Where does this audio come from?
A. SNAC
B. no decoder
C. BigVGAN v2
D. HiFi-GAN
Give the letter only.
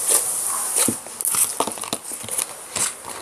B